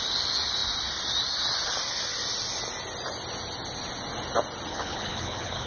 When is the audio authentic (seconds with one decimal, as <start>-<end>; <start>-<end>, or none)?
0.0-4.7